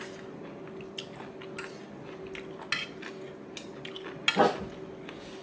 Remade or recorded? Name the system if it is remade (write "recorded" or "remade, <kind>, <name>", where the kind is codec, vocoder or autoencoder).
recorded